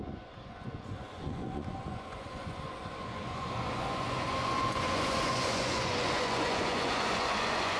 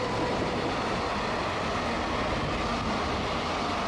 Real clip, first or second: second